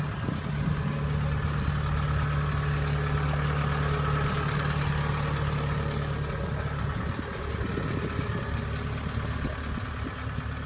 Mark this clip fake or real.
real